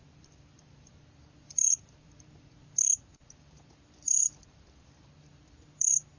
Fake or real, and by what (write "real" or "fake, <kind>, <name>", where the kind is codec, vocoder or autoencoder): fake, vocoder, BigVGAN v2